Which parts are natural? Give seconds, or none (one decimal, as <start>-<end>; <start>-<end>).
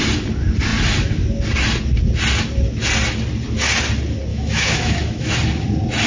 0.0-4.3; 5.3-6.1